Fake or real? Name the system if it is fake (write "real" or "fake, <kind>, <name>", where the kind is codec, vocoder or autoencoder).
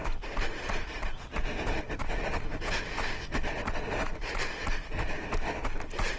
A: real